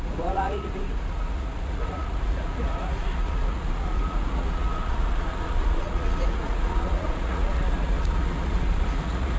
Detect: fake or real fake